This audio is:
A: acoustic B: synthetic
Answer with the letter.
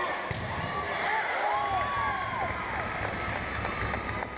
A